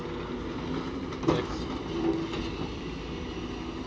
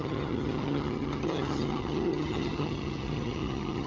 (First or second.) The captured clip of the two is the first